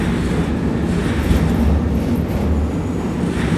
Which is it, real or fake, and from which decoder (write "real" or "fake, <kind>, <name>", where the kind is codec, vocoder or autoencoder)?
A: real